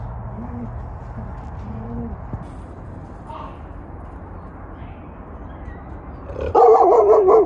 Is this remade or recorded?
recorded